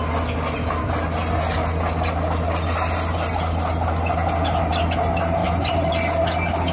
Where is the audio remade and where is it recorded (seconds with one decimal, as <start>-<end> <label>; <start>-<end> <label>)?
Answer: 0.0-5.4 recorded; 5.4-5.9 remade; 5.9-6.7 recorded

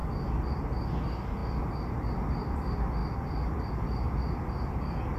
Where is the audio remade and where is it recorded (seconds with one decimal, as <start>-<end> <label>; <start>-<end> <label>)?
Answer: 0.0-5.2 recorded

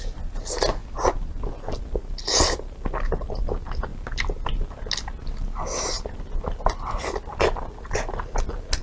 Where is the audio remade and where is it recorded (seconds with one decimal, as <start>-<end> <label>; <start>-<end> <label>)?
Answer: 0.0-8.8 recorded

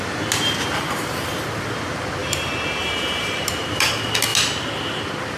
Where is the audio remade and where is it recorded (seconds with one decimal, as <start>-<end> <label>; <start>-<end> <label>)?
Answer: 0.0-2.2 recorded; 2.2-3.9 remade; 3.9-5.4 recorded

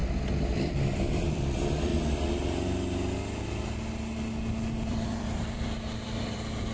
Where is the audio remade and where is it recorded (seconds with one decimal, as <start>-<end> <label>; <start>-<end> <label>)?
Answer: 0.0-0.6 recorded; 0.6-1.9 remade; 1.9-4.9 recorded; 4.9-6.7 remade

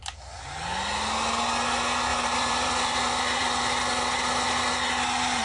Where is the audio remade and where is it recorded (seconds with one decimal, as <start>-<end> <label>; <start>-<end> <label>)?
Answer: 0.0-2.1 recorded; 2.1-3.6 remade; 3.6-5.4 recorded